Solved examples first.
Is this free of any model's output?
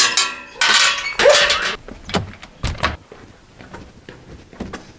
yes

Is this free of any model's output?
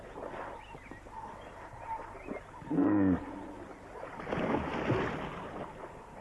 yes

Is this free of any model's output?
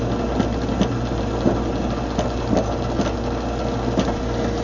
yes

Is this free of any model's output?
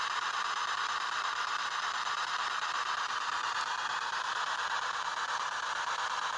yes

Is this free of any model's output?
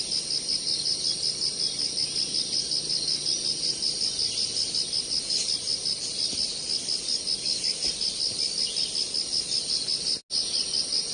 yes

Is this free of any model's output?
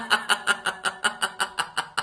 yes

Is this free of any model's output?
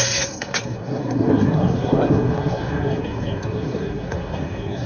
no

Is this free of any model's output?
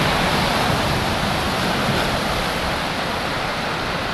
yes